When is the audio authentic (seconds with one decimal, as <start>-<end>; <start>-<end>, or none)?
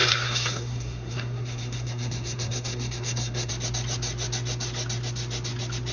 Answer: 3.5-5.9